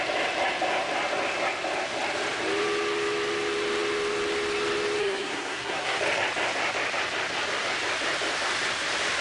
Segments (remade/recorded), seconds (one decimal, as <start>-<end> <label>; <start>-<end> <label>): 0.0-5.0 recorded; 5.0-6.0 remade; 6.0-9.2 recorded